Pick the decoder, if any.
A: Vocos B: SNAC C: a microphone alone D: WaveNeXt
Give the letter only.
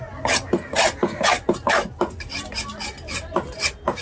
C